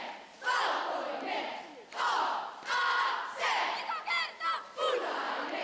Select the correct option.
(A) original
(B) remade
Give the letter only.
A